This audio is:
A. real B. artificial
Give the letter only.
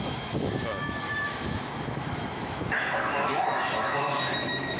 B